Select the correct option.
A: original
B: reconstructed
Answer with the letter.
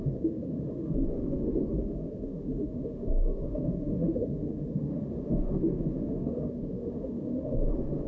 B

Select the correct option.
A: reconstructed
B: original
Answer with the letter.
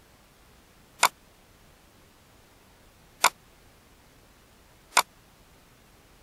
B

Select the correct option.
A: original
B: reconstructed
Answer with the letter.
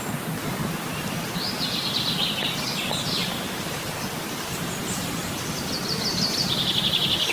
A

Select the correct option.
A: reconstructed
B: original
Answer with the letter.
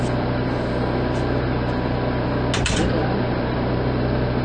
B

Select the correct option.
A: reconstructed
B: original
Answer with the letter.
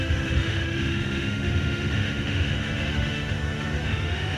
A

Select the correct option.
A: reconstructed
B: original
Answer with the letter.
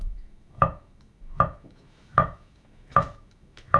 A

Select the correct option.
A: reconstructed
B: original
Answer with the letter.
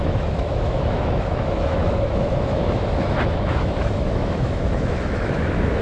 A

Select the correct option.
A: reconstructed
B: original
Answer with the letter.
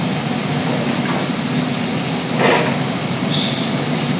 B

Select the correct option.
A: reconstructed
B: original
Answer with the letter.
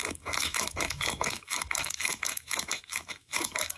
A